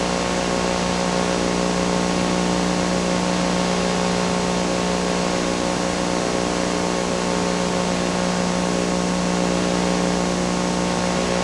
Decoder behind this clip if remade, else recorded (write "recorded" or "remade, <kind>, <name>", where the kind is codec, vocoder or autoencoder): recorded